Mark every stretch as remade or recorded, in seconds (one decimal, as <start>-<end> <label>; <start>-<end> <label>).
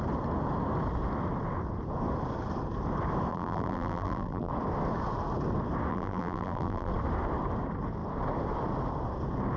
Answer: 0.0-3.3 recorded; 3.3-4.5 remade; 4.5-5.9 recorded; 5.9-6.9 remade; 6.9-9.6 recorded